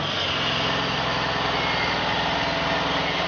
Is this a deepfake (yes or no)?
no